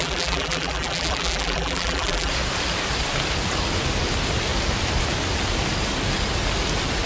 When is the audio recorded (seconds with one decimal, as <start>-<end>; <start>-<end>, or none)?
2.3-7.1